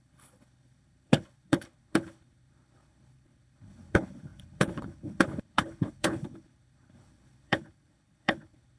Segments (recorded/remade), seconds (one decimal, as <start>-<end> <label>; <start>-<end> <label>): 0.0-8.8 remade

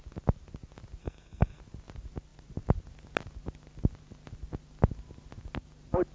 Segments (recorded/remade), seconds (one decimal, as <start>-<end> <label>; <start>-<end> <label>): 0.0-1.0 recorded; 1.0-1.6 remade; 1.6-6.1 recorded